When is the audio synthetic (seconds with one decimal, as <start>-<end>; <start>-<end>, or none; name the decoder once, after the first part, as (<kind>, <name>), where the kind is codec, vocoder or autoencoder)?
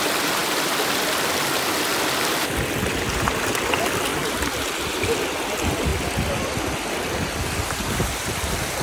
4.1-5.2 (vocoder, BigVGAN v2); 5.9-6.6